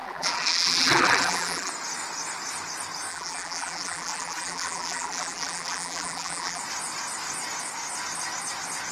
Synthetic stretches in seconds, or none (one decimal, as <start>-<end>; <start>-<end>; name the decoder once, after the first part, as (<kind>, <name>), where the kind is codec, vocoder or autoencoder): 0.0-1.7 (vocoder, BigVGAN v2); 3.1-6.6